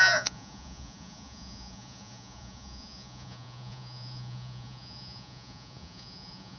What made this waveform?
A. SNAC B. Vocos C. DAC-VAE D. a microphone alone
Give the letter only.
B